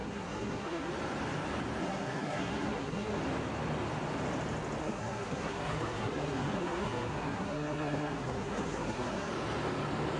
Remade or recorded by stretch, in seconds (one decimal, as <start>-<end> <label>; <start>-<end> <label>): 0.0-0.9 remade; 0.9-1.8 recorded; 1.8-3.2 remade; 3.2-4.8 recorded; 4.8-9.3 remade; 9.3-10.2 recorded

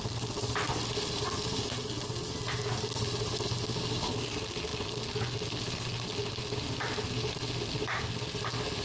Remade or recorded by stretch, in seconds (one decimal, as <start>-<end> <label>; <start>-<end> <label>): 0.0-8.8 recorded

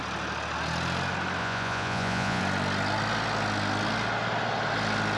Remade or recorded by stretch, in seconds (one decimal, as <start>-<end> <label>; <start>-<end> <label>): 0.0-1.4 recorded; 1.4-2.4 remade; 2.4-5.2 recorded

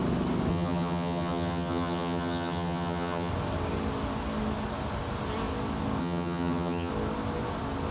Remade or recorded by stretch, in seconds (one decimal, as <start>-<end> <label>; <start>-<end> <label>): 0.0-0.5 recorded; 0.5-3.3 remade; 3.3-6.0 recorded; 6.0-6.9 remade; 6.9-7.9 recorded

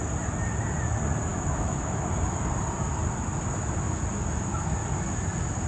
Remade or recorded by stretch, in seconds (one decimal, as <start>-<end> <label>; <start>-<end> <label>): 0.0-1.3 recorded; 1.3-2.1 remade; 2.1-5.7 recorded

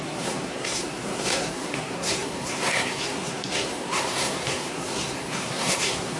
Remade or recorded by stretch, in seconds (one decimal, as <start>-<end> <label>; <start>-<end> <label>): 0.0-6.2 remade

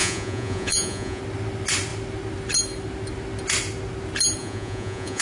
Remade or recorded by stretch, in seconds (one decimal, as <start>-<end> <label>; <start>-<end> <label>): 0.0-1.2 remade; 1.2-4.4 recorded; 4.4-5.2 remade

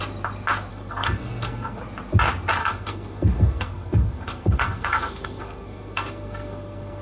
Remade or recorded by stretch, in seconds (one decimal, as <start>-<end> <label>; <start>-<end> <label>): 0.0-0.7 recorded; 0.7-1.8 remade; 1.8-2.6 recorded; 2.6-7.0 remade